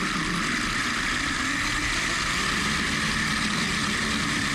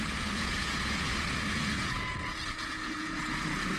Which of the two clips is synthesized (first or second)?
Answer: second